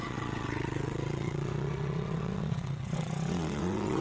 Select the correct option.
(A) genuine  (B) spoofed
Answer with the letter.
B